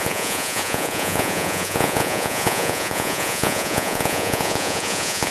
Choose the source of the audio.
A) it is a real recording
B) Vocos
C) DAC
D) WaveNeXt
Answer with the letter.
B